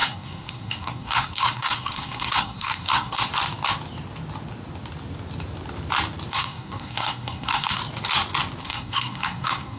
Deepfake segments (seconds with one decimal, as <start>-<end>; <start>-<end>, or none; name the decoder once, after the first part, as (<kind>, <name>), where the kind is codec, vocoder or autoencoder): 0.0-3.3 (codec, SNAC); 6.3-7.8; 8.6-9.8